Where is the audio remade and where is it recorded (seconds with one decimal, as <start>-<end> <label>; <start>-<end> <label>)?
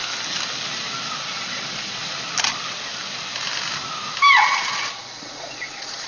0.0-1.2 recorded; 1.2-2.0 remade; 2.0-4.4 recorded; 4.4-6.1 remade